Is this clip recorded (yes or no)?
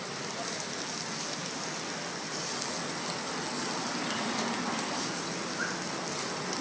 yes